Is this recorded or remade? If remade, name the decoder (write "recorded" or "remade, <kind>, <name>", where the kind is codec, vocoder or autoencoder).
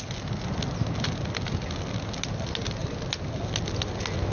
recorded